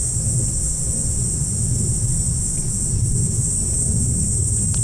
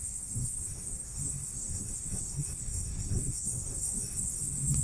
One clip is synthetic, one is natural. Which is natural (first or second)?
first